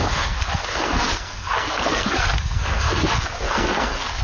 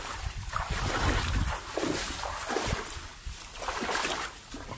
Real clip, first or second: second